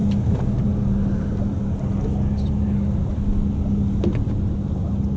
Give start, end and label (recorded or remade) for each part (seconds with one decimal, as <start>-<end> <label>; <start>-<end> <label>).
0.0-5.2 recorded